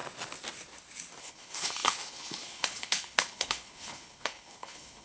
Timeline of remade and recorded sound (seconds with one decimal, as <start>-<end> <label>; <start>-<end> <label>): 0.0-1.2 recorded; 1.2-5.0 remade